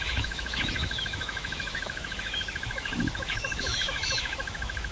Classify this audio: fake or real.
fake